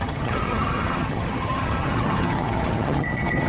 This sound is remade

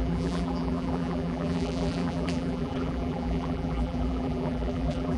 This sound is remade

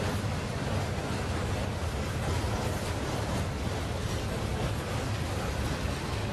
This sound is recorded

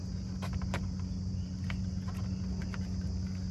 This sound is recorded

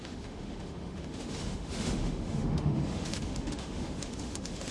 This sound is remade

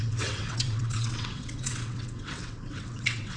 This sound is remade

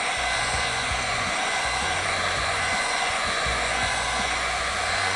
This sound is remade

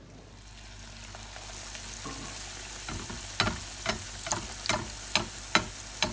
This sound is recorded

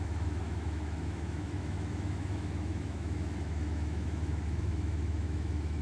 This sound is remade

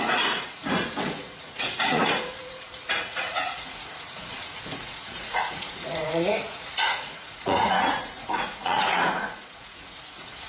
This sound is remade